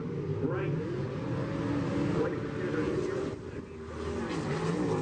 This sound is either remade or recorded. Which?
recorded